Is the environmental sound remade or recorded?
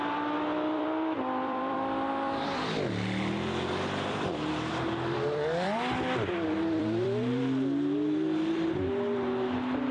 remade